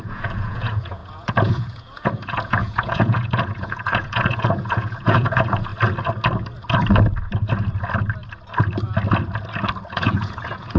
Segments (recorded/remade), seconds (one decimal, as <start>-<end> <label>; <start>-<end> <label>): 0.0-5.7 remade; 5.7-9.9 recorded; 9.9-10.8 remade

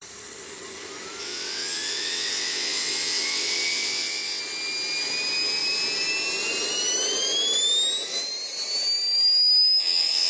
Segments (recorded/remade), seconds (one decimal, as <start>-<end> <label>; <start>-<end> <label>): 0.0-1.2 recorded; 1.2-4.4 remade; 4.4-9.8 recorded; 9.8-10.3 remade

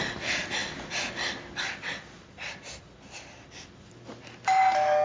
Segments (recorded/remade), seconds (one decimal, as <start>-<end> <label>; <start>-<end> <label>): 0.0-5.0 recorded